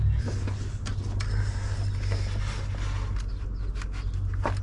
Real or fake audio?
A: real